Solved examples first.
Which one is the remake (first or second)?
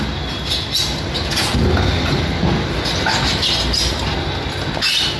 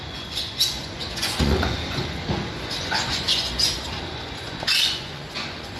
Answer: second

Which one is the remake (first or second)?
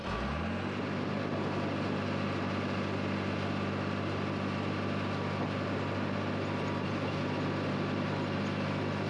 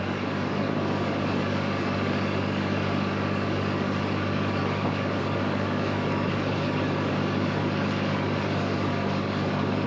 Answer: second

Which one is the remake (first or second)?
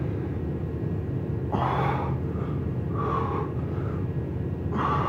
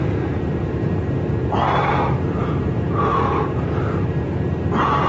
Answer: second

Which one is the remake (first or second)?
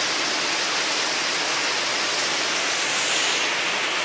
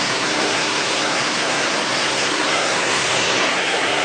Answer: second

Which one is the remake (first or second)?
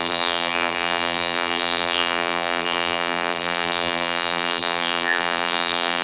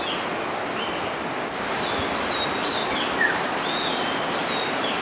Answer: first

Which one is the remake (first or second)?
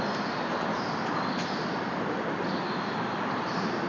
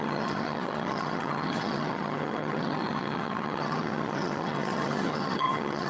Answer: second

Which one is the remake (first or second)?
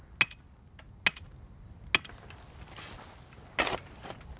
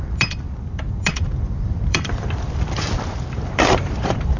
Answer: second